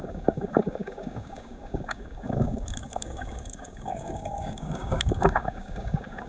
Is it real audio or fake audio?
fake